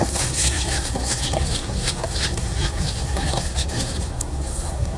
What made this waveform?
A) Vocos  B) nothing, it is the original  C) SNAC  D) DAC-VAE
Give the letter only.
C